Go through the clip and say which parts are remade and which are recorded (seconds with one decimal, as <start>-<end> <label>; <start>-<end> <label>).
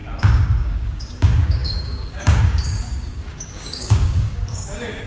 0.0-5.1 remade